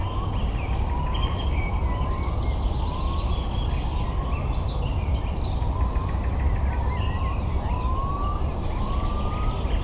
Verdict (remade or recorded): recorded